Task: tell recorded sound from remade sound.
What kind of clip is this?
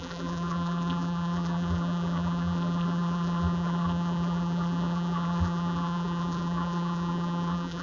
remade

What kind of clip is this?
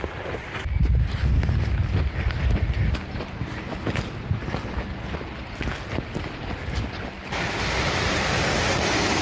recorded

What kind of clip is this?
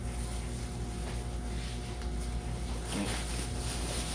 recorded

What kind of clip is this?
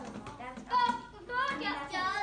recorded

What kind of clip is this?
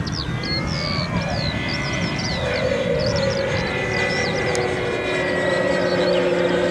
recorded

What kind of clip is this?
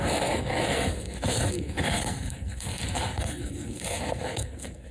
remade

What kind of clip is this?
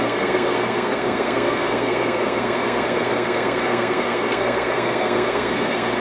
remade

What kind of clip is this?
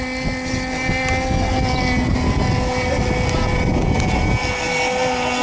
recorded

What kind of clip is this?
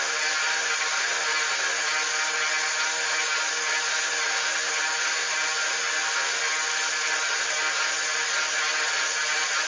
recorded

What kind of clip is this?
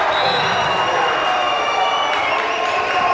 recorded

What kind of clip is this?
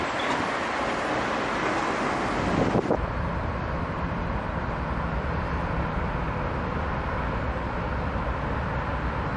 recorded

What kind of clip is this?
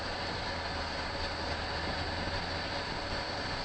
recorded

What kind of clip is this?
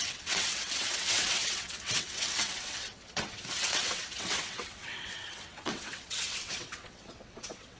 remade